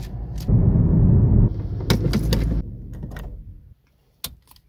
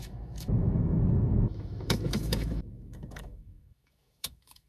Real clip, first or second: first